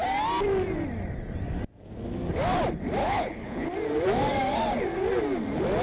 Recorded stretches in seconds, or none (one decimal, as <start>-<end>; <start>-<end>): 0.0-3.0; 3.7-5.8